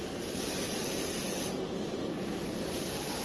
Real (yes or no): yes